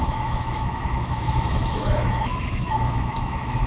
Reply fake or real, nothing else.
fake